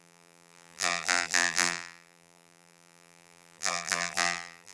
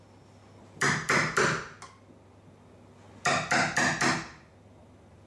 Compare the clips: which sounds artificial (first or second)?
first